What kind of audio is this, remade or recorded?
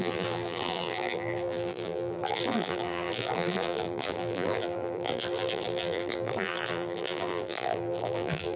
remade